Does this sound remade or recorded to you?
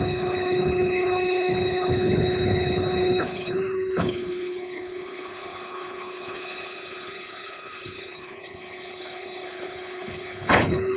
remade